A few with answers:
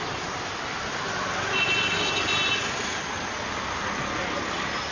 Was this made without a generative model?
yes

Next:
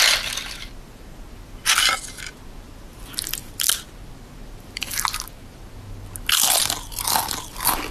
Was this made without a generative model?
yes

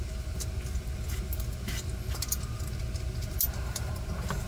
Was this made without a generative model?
yes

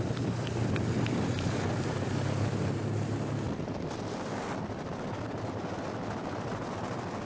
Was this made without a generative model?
yes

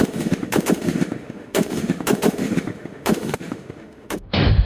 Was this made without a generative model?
no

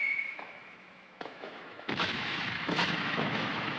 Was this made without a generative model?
no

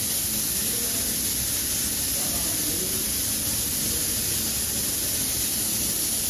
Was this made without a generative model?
yes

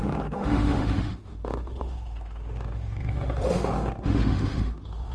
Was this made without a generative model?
no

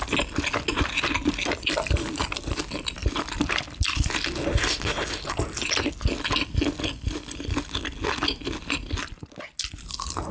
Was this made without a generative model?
yes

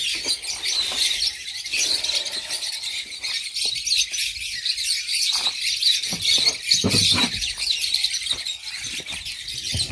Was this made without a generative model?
yes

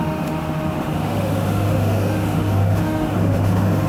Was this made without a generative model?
no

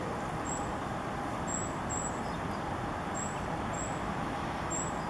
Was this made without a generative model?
yes